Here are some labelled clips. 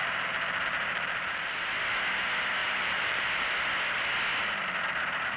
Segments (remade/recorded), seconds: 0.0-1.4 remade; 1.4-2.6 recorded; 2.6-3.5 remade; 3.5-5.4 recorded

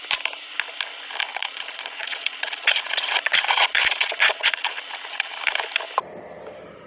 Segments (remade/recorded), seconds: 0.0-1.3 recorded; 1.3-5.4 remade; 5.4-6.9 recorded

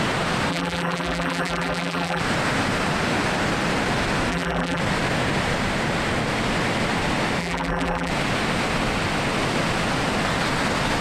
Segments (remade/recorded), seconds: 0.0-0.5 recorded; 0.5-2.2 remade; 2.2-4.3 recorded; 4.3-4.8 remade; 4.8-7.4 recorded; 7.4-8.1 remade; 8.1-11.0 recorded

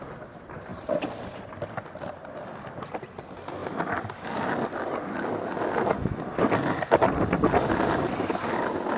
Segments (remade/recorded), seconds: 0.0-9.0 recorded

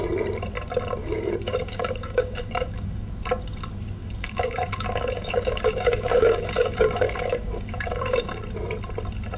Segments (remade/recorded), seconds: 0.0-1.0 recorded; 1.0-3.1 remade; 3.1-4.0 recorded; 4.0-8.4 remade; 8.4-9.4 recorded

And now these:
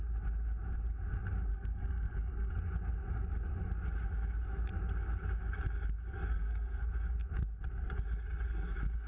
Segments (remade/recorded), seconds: 0.0-1.5 recorded; 1.5-2.5 remade; 2.5-6.3 recorded; 6.3-6.9 remade; 6.9-9.1 recorded

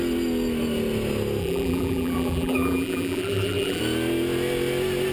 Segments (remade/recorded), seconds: 0.0-1.4 recorded; 1.4-3.8 remade; 3.8-5.1 recorded